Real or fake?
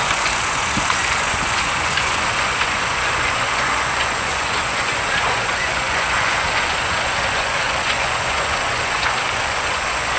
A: fake